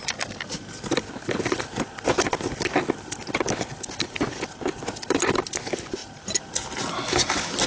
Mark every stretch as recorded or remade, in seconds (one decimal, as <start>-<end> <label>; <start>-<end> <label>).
0.0-7.7 recorded